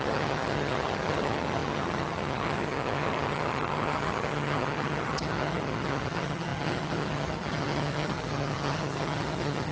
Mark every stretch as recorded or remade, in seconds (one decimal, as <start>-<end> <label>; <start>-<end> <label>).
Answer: 0.0-9.7 remade